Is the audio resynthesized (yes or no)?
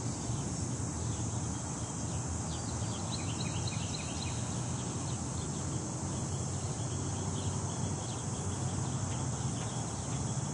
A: no